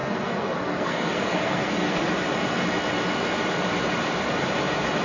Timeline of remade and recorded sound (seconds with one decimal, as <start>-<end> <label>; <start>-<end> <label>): 0.0-2.0 remade; 2.0-5.0 recorded